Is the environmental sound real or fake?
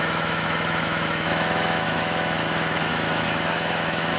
fake